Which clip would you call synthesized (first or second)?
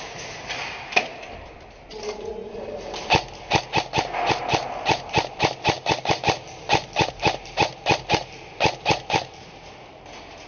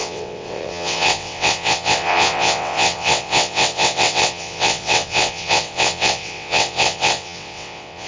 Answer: second